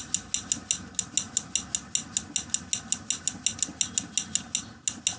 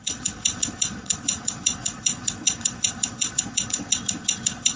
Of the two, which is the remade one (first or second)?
second